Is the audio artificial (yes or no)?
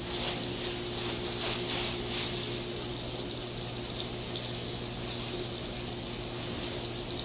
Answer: no